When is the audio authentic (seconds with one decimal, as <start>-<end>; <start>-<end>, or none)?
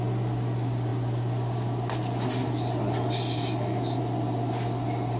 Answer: 0.0-5.2